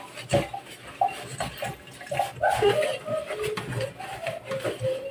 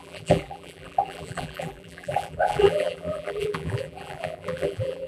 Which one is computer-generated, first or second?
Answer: second